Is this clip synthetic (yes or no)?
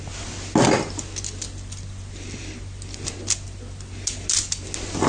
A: no